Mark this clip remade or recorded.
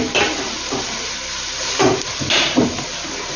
recorded